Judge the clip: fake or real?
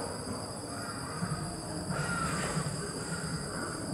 fake